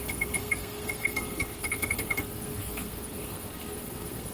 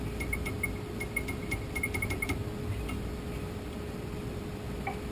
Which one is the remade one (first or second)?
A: first